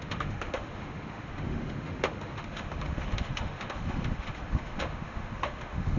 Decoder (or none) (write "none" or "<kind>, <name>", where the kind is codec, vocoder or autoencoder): autoencoder, DAC-VAE